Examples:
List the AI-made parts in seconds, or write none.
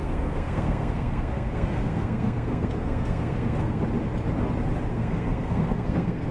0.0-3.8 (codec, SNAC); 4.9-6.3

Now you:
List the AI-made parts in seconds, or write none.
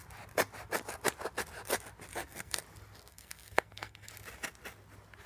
2.1-2.6 (codec, SNAC); 3.1-4.1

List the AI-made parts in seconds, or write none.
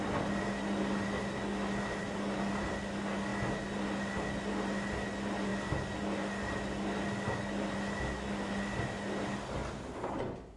none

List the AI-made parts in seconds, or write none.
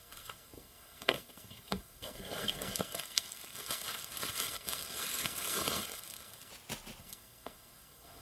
0.0-6.5 (codec, SNAC); 7.0-8.2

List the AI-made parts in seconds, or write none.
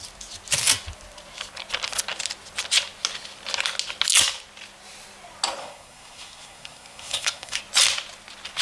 5.6-7.6 (codec, SNAC)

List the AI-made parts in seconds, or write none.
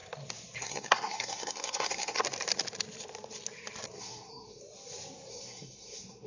0.6-2.2 (codec, SNAC); 4.0-4.6; 5.3-6.3